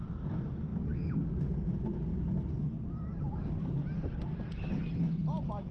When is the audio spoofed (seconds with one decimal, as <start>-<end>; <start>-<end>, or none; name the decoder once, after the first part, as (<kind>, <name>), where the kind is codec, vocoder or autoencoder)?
none